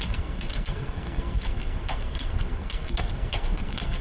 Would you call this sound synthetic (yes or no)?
yes